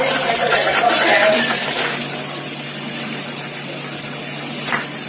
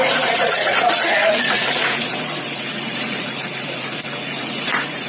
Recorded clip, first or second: first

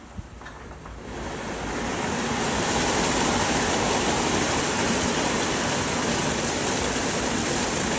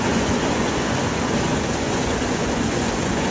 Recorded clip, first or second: first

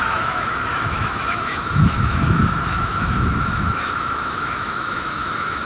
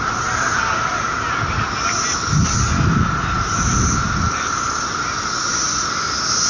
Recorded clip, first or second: second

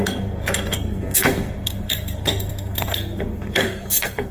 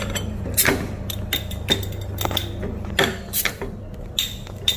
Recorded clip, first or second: second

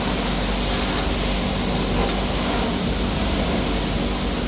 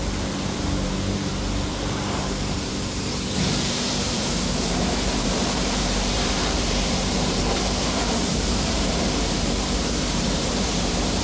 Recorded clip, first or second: first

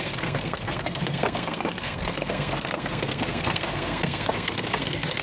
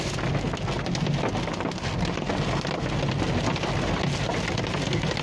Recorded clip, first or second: second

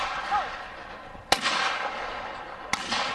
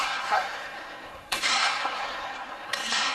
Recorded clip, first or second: first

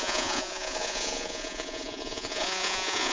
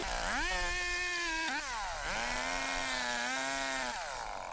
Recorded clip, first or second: second